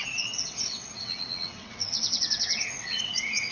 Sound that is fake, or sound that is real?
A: fake